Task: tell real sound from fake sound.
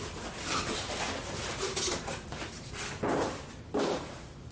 real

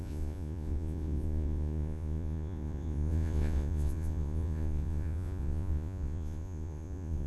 fake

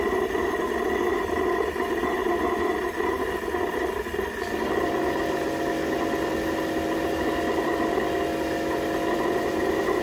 real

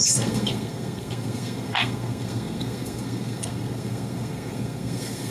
fake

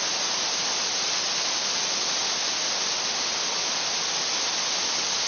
real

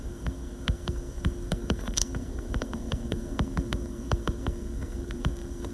fake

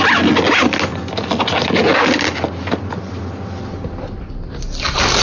real